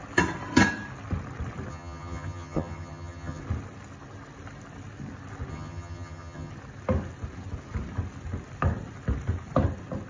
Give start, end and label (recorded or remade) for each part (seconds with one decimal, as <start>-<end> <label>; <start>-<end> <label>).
0.0-1.7 recorded; 1.7-3.4 remade; 3.4-5.5 recorded; 5.5-6.5 remade; 6.5-10.1 recorded